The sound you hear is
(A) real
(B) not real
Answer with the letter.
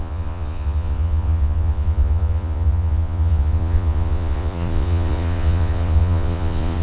B